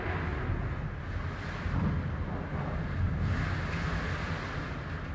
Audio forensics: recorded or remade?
recorded